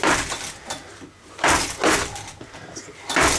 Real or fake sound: real